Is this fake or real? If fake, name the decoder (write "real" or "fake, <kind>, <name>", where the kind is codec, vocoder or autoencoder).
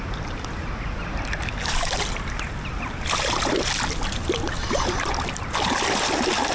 real